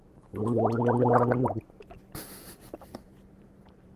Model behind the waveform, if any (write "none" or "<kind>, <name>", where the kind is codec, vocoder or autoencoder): vocoder, BigVGAN v2